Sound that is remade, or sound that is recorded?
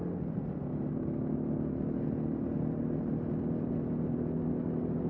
recorded